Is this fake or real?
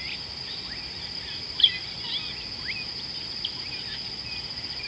real